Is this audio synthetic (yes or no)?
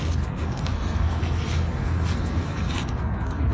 yes